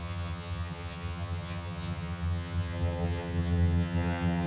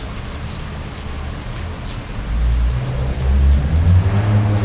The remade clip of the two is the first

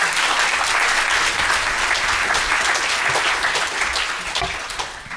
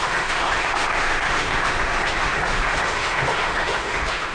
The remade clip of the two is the second